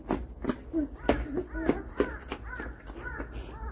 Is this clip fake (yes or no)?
no